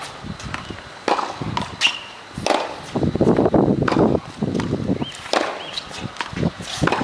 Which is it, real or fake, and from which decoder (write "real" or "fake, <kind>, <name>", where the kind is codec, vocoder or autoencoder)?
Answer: real